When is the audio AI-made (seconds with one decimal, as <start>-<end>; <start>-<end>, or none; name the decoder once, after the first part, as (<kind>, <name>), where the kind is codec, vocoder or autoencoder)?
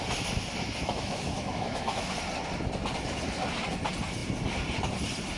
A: 0.8-2.1 (autoencoder, DAC-VAE)